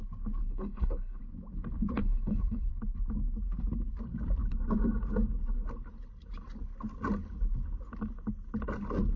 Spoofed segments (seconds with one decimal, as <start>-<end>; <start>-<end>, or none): 0.4-1.2; 2.0-2.7